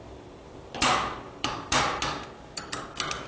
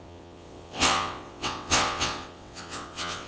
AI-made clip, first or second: second